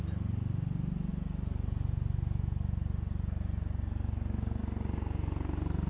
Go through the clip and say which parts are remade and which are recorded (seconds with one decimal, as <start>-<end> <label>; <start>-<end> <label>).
0.0-5.9 recorded